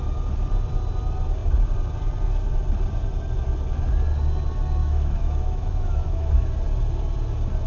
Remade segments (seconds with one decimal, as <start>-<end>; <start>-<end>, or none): 4.8-6.5